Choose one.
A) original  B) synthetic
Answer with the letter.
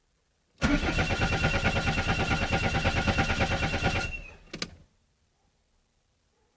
A